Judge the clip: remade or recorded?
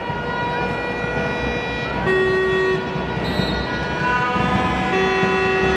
recorded